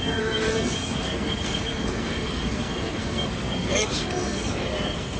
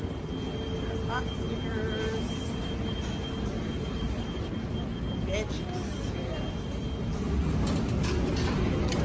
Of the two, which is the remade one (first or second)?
first